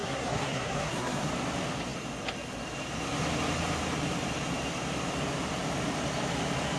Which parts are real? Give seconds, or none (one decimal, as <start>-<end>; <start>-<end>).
1.3-6.8